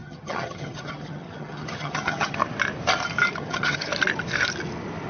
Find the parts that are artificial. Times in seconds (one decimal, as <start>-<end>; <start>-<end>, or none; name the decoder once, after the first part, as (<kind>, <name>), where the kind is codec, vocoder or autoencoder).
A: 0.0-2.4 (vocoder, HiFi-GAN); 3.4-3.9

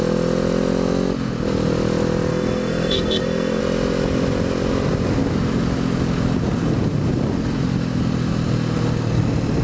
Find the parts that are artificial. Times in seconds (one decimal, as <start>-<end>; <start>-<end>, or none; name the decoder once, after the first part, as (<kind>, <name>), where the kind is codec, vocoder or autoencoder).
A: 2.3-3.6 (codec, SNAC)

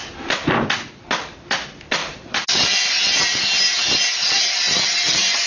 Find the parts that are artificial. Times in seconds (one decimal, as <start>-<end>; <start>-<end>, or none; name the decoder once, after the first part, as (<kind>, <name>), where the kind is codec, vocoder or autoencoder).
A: 2.0-5.5 (vocoder, BigVGAN v2)